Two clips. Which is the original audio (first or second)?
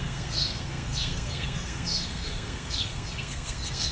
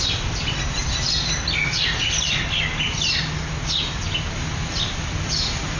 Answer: second